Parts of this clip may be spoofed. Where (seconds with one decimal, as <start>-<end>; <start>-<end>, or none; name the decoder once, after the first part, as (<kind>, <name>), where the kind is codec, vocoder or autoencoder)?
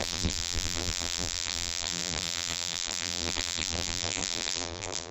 0.0-5.1 (vocoder, BigVGAN v2)